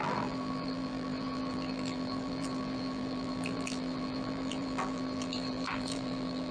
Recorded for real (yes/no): no